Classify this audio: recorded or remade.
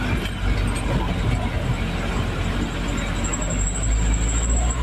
recorded